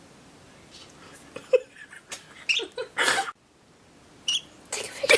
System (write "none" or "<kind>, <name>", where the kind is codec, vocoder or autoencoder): none